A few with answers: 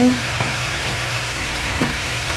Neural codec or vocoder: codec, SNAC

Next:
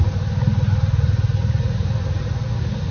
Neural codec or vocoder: none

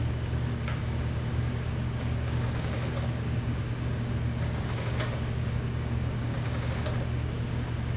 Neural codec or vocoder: codec, DAC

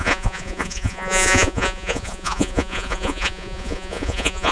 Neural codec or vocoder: vocoder, Vocos